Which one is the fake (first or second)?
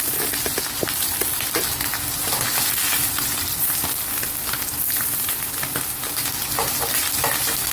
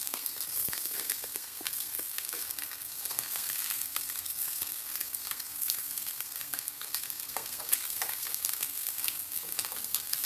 second